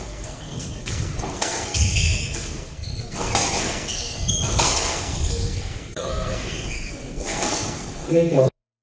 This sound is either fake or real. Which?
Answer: fake